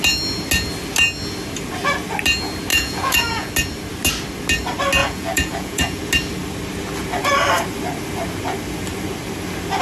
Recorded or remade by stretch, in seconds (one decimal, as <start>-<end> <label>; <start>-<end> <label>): 0.0-2.7 recorded; 2.7-3.5 remade; 3.5-5.0 recorded; 5.0-6.0 remade; 6.0-9.8 recorded